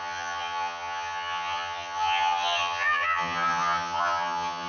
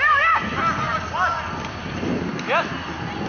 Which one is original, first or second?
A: second